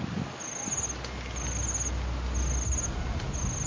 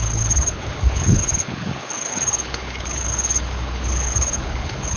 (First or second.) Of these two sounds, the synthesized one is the second